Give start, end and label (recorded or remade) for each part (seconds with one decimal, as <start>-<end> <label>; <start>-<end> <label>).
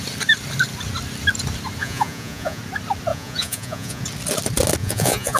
0.0-1.8 recorded; 1.8-2.6 remade; 2.6-3.1 recorded; 3.1-4.0 remade; 4.0-4.8 recorded; 4.8-5.4 remade